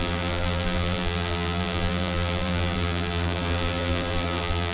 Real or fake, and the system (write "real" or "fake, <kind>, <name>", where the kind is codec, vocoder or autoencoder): fake, vocoder, BigVGAN v2